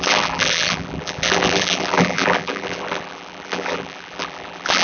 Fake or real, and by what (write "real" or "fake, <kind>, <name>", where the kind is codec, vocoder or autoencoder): fake, vocoder, BigVGAN v2